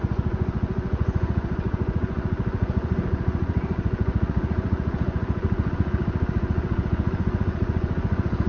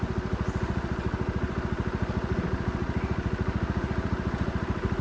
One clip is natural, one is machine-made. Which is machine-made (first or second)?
first